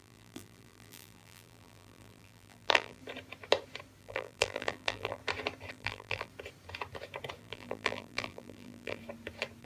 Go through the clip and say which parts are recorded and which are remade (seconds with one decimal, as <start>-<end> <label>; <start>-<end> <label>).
0.0-3.0 remade; 3.0-4.0 recorded; 4.0-5.2 remade; 5.2-5.7 recorded; 5.7-6.3 remade; 6.3-7.4 recorded; 7.4-9.0 remade; 9.0-9.6 recorded